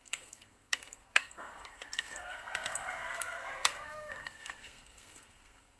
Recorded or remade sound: remade